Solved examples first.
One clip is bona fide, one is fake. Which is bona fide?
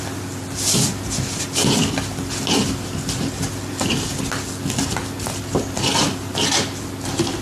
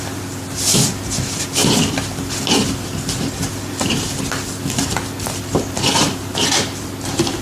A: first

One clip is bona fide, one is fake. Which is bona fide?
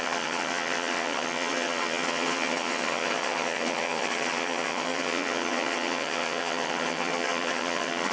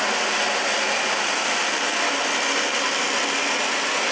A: second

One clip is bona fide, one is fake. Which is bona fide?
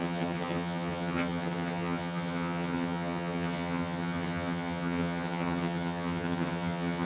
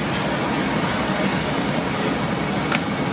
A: second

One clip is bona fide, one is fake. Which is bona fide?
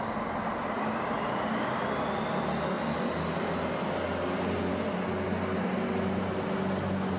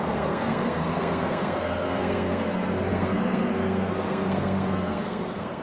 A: first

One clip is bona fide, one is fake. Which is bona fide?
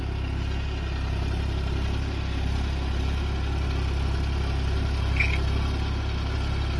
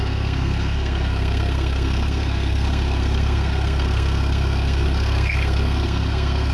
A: first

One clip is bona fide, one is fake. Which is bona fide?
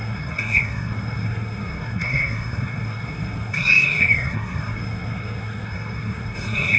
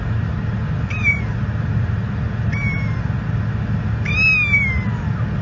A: second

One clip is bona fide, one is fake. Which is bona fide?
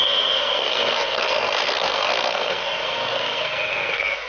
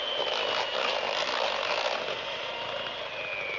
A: second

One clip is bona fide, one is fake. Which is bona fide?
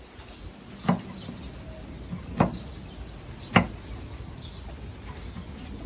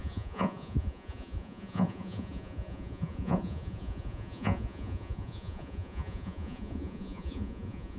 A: first